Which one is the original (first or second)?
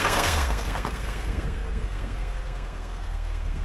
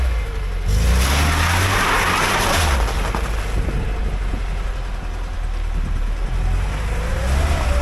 second